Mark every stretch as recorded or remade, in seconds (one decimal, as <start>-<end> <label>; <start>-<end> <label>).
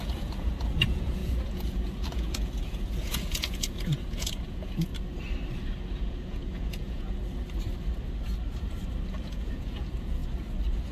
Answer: 0.0-4.9 remade; 4.9-5.9 recorded; 5.9-7.2 remade; 7.2-9.2 recorded; 9.2-10.2 remade; 10.2-10.9 recorded